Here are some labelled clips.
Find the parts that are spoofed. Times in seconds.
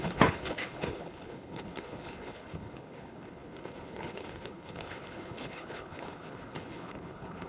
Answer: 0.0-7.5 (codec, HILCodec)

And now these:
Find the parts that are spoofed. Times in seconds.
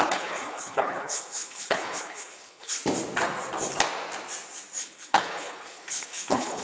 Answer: 0.0-2.8 (codec, HILCodec); 4.8-6.6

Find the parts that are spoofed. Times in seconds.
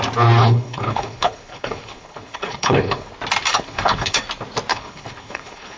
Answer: 0.4-3.1 (codec, HILCodec); 3.5-4.2; 4.7-5.8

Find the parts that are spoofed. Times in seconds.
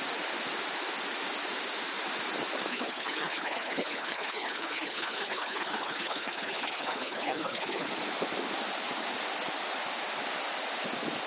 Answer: 2.7-7.9 (codec, HILCodec)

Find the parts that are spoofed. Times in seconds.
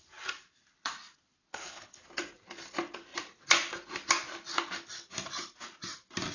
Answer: 1.5-2.0 (codec, HILCodec)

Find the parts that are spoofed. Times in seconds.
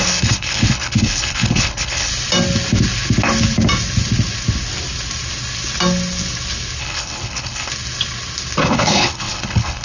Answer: 0.0-2.1 (codec, HILCodec); 6.8-7.7; 8.6-9.8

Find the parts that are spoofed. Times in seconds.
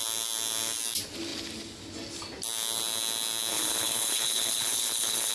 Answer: 3.5-5.3 (codec, HILCodec)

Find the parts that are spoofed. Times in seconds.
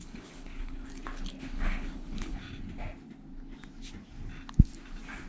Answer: 0.0-0.9 (codec, HILCodec); 1.4-2.4